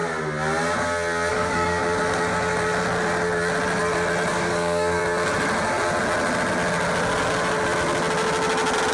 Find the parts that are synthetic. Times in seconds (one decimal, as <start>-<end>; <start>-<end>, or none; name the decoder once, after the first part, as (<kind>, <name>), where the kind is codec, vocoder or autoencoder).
1.3-1.8 (codec, DAC); 4.3-5.0